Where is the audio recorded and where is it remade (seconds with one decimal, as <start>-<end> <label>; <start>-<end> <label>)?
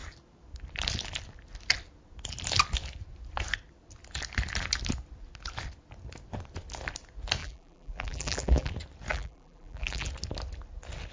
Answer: 0.0-7.4 recorded; 7.4-8.7 remade; 8.7-9.1 recorded; 9.1-10.1 remade; 10.1-11.1 recorded